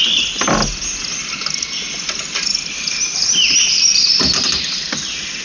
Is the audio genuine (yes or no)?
yes